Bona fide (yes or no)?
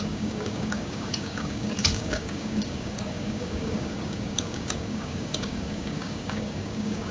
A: no